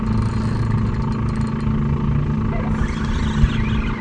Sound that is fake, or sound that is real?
real